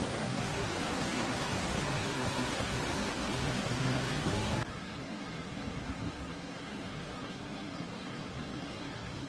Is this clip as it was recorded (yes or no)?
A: no